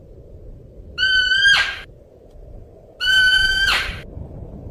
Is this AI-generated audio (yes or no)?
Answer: yes